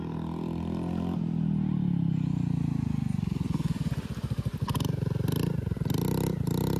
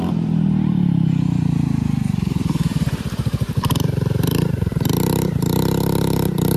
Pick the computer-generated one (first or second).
second